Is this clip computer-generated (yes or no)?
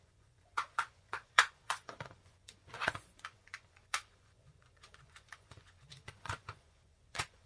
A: yes